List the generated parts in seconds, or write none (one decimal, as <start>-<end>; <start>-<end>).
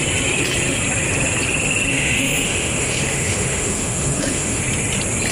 1.9-4.6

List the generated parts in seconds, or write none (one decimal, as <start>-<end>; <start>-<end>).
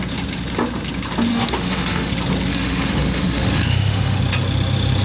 1.3-2.1; 2.5-4.2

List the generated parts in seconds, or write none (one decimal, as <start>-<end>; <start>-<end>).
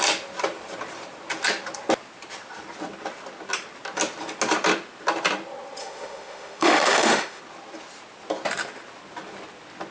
5.8-7.4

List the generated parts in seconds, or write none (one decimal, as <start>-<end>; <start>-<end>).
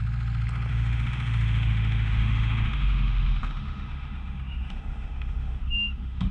0.7-6.3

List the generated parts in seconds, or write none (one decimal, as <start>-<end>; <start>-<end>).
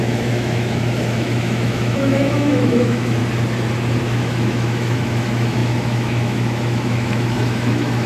0.0-3.2; 4.0-8.1